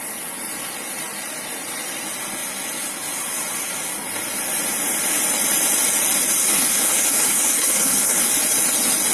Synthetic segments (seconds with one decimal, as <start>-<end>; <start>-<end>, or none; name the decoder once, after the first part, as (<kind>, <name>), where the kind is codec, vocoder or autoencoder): 6.4-8.3 (codec, HILCodec)